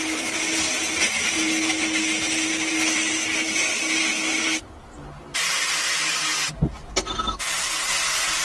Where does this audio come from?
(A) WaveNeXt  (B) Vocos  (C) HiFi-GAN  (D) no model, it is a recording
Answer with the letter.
D